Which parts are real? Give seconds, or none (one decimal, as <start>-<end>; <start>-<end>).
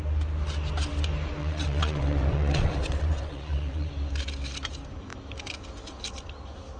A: 0.0-1.4; 3.9-6.8